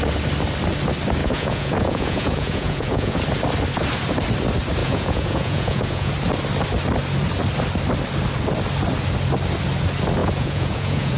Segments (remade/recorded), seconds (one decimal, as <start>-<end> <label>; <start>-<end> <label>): 0.0-1.2 recorded; 1.2-3.2 remade; 3.2-4.8 recorded; 4.8-6.1 remade; 6.1-10.2 recorded; 10.2-11.2 remade